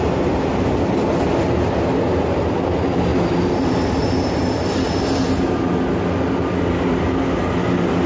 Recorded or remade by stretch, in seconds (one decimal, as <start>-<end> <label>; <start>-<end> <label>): 0.0-1.9 recorded; 1.9-2.5 remade; 2.5-3.1 recorded; 3.1-5.0 remade; 5.0-8.1 recorded